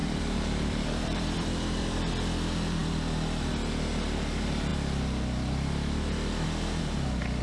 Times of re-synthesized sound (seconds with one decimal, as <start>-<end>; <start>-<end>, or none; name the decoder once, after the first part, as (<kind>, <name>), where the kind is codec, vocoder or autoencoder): 0.0-2.1 (vocoder, BigVGAN v2)

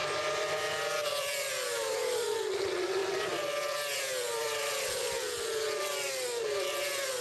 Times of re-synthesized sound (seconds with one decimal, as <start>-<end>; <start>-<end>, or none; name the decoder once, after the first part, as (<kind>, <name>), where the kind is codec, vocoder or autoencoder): 1.2-7.2 (vocoder, BigVGAN v2)

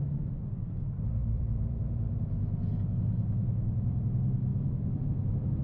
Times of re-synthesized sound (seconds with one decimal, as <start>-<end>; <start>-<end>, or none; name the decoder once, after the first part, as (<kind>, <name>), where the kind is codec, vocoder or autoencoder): 1.2-1.8 (vocoder, BigVGAN v2); 4.5-5.1

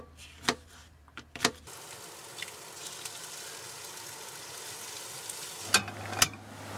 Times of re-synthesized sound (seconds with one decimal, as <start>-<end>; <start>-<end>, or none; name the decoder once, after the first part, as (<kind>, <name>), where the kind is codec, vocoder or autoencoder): 0.8-1.4 (vocoder, BigVGAN v2)